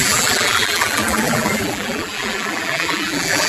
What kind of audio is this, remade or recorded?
remade